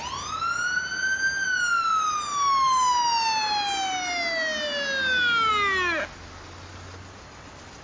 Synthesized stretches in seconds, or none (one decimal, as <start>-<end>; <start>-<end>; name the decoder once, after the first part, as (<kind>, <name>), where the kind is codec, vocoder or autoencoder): none